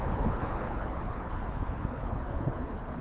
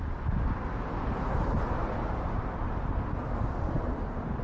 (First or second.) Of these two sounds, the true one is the second